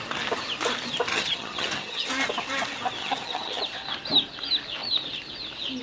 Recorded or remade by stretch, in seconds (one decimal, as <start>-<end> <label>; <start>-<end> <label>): 0.0-1.1 recorded; 1.1-2.1 remade; 2.1-3.0 recorded; 3.0-3.6 remade; 3.6-5.8 recorded